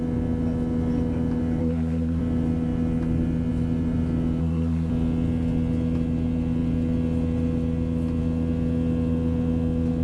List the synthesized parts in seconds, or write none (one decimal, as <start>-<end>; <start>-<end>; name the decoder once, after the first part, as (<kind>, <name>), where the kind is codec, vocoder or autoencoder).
1.6-2.2 (codec, SNAC); 4.4-4.9